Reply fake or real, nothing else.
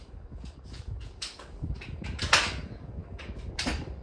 fake